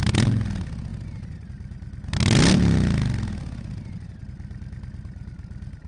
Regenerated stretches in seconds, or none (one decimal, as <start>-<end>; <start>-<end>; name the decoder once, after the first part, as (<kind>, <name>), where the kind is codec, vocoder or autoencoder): none